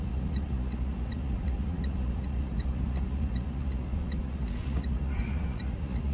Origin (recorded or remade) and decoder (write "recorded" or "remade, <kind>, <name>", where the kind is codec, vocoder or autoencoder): remade, vocoder, Vocos